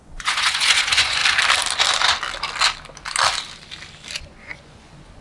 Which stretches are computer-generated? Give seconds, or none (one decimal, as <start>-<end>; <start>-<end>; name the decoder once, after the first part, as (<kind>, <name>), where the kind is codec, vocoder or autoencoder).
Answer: 0.0-1.2 (vocoder, Vocos); 4.2-5.2